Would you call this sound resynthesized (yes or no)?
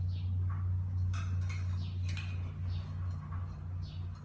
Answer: no